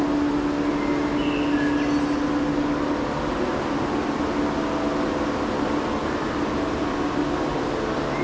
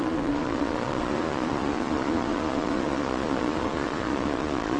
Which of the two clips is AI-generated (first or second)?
second